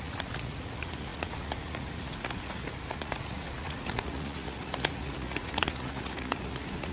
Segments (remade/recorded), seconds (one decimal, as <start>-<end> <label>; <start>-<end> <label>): 0.0-6.9 remade